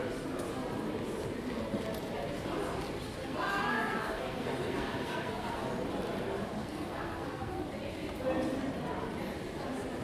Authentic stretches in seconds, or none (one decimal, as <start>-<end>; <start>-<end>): 0.0-3.2; 5.6-6.6; 7.6-10.0